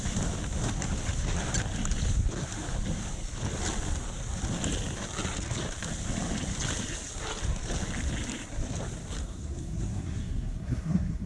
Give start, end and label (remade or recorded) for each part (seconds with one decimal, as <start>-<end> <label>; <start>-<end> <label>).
0.0-9.2 recorded; 9.2-11.3 remade